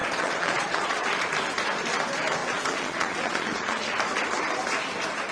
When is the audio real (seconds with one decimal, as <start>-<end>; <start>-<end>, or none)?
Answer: 1.1-2.4; 3.8-5.3